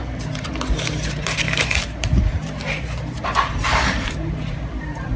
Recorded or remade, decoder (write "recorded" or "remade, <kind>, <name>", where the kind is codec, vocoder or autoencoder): remade, vocoder, BigVGAN v2